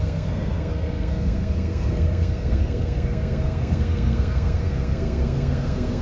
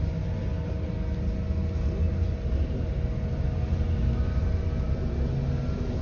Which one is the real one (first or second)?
second